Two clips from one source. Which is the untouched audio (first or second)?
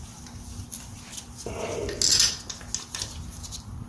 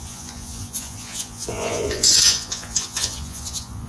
first